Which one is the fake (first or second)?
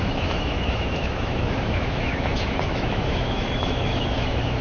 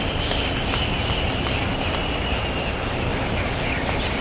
first